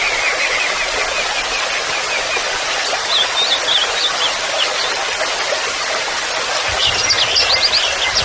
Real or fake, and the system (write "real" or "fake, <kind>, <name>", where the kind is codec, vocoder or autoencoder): real